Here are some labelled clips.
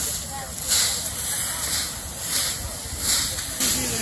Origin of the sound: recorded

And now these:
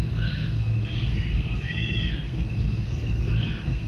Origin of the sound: remade